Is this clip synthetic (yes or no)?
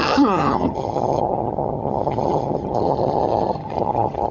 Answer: yes